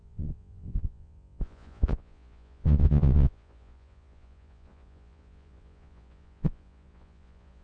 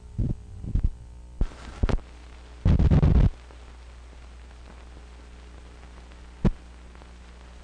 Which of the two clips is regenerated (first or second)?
first